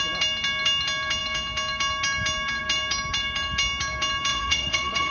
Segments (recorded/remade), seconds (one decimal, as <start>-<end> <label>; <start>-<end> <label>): 0.0-4.3 recorded; 4.3-5.1 remade